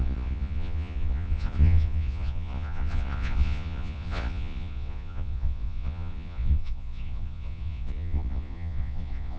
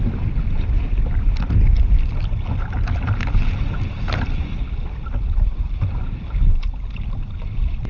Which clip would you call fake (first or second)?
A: first